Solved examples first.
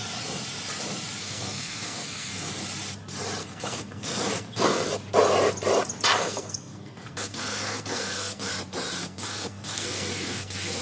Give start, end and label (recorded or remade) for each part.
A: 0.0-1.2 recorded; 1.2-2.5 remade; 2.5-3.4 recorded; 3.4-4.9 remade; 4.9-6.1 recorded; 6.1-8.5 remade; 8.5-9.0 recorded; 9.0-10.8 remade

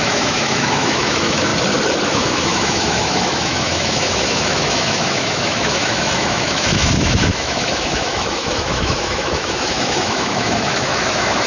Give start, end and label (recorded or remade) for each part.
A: 0.0-1.5 remade; 1.5-2.1 recorded; 2.1-11.5 remade